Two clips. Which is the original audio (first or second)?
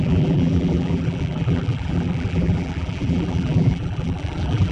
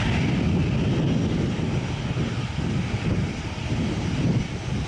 second